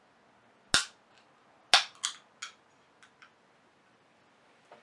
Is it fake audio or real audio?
real